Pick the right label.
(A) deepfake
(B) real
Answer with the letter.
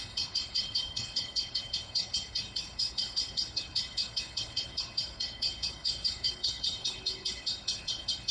A